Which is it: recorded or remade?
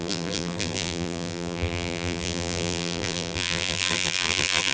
remade